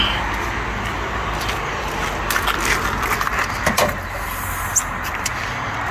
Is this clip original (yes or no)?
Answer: yes